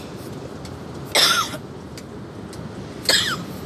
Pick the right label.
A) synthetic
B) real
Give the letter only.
B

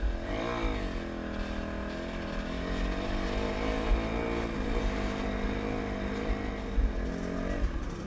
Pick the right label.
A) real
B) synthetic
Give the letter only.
A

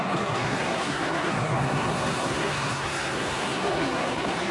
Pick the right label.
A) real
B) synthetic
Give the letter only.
B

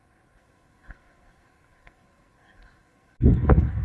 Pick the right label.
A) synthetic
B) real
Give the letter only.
A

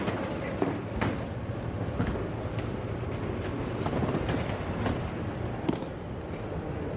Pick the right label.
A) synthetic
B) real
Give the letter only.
B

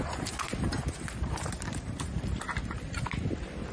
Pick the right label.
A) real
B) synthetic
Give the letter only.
A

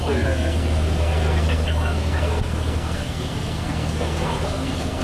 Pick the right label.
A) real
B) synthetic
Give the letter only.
B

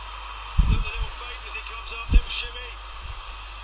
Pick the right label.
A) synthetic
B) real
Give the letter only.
B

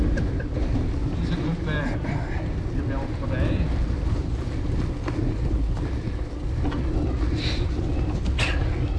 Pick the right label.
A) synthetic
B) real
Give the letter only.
B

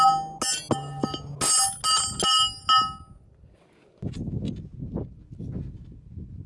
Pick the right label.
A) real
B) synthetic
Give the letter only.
A